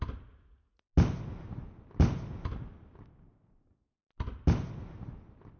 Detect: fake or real real